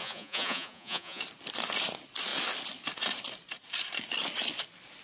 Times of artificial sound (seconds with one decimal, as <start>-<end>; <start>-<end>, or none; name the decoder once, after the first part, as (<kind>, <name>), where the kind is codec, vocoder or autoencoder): 0.0-1.2 (vocoder, Vocos)